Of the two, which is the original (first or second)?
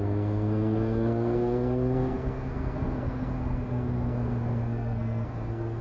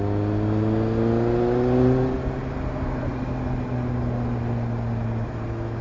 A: second